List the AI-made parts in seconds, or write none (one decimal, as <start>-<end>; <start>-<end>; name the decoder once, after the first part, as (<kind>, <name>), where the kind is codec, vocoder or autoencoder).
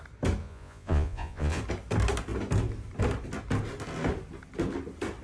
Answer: 0.4-1.6 (vocoder, Vocos)